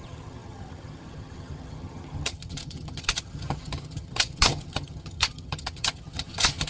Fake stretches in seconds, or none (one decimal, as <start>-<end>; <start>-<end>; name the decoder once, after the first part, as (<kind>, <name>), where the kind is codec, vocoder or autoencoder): 0.0-6.7 (vocoder, HiFi-GAN)